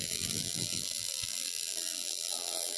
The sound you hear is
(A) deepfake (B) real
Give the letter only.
A